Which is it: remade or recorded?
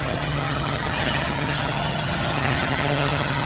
remade